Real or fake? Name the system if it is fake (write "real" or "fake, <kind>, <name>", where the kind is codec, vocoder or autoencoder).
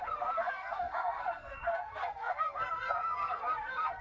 fake, codec, SNAC